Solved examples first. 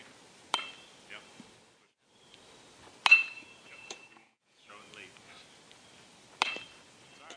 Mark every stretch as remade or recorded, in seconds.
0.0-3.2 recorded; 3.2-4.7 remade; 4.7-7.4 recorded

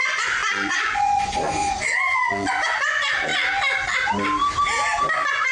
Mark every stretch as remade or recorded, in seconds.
0.0-3.3 remade; 3.3-5.0 recorded; 5.0-5.5 remade

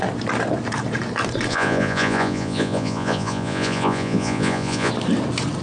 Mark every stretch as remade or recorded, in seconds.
0.0-1.5 recorded; 1.5-4.9 remade; 4.9-5.6 recorded

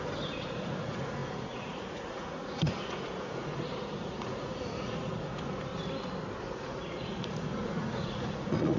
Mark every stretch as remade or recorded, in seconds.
0.0-5.7 remade; 5.7-6.4 recorded; 6.4-8.8 remade

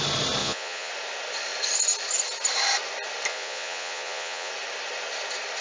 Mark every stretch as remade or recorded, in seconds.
0.0-0.4 recorded; 0.4-0.9 remade; 0.9-3.3 recorded; 3.3-4.5 remade; 4.5-5.6 recorded